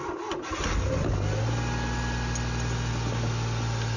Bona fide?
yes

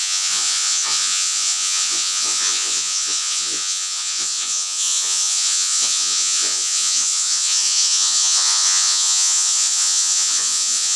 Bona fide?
no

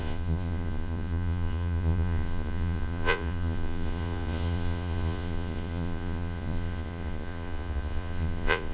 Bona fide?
no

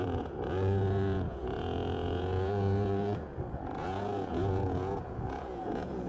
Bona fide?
no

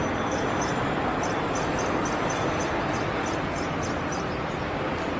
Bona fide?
yes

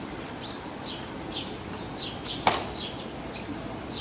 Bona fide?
yes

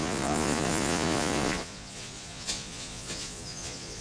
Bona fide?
no